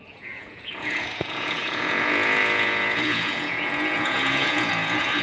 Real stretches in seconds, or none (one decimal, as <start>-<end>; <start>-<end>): none